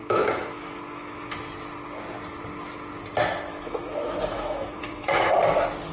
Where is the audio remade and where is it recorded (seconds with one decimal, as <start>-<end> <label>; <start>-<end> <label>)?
0.0-1.3 remade; 1.3-3.5 recorded; 3.5-5.4 remade; 5.4-5.9 recorded